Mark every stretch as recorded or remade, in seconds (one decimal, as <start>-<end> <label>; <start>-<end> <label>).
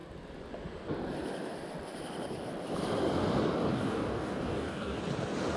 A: 0.0-3.7 recorded; 3.7-5.0 remade; 5.0-5.6 recorded